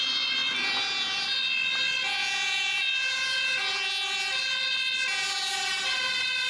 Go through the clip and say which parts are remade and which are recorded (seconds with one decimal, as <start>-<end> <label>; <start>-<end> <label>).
0.0-2.2 recorded; 2.2-3.6 remade; 3.6-6.5 recorded